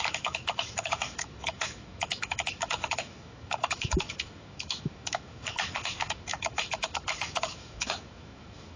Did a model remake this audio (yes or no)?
yes